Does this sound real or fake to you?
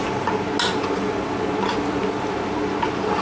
real